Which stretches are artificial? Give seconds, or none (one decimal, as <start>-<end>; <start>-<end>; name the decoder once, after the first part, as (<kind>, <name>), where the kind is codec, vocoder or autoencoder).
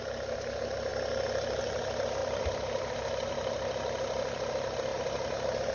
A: 2.2-2.9 (vocoder, BigVGAN v2); 4.9-5.7